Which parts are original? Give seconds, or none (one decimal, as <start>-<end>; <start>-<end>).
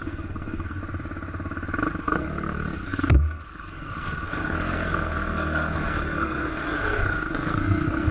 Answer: 0.8-2.0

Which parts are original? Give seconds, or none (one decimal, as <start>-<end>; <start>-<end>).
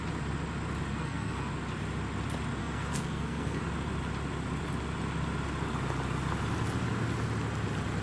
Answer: 0.0-0.9; 1.5-2.6; 3.6-8.0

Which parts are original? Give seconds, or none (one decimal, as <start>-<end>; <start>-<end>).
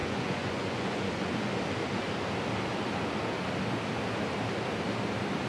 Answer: 1.5-5.5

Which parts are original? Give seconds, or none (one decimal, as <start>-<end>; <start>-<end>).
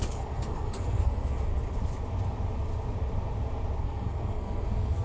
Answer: 1.5-3.8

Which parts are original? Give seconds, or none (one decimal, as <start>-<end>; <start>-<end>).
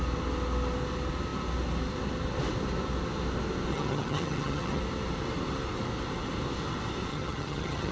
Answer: 0.0-3.7; 4.8-7.1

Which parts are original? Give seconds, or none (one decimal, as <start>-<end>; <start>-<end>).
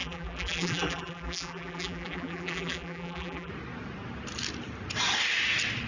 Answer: 3.5-5.9